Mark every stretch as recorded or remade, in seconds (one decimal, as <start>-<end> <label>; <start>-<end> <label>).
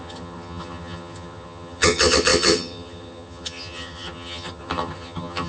0.0-5.5 remade